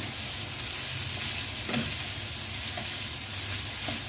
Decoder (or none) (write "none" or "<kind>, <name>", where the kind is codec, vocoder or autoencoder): none